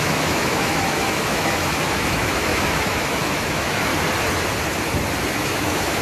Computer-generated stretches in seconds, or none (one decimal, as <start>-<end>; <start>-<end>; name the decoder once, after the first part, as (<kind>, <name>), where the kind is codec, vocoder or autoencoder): 0.0-3.9 (autoencoder, DAC-VAE); 5.2-6.0